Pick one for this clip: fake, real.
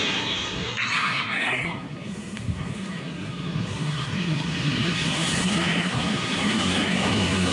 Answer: fake